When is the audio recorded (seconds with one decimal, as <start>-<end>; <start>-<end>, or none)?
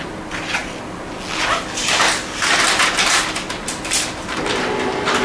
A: 0.6-3.6